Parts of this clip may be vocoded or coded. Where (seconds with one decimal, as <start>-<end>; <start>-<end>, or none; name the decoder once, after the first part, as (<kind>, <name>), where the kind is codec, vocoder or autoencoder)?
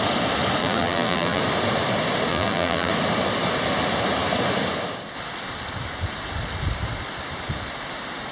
0.6-1.4 (vocoder, BigVGAN v2); 2.3-2.9